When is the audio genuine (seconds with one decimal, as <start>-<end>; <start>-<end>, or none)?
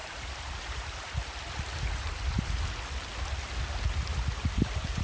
2.6-4.1